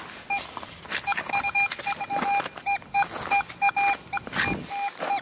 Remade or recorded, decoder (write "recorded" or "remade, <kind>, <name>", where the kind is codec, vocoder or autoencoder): recorded